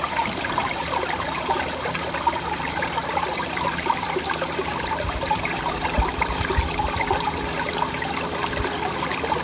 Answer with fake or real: fake